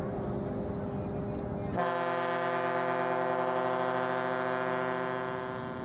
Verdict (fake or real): real